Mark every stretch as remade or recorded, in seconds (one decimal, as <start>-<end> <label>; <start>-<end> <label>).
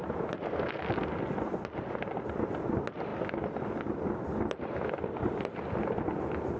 0.0-6.6 recorded